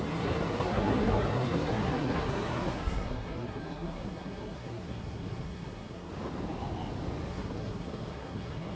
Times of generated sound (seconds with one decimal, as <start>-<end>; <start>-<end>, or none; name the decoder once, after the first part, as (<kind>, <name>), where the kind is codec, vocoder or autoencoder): 0.0-6.1 (codec, SNAC); 7.3-8.8